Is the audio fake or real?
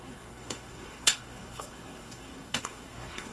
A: fake